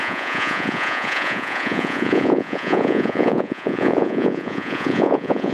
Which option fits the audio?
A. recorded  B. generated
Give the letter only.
B